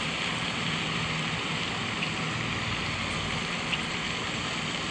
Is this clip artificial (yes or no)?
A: no